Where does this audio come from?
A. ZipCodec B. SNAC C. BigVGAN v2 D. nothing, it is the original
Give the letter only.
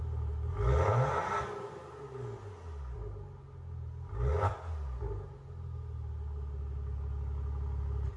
D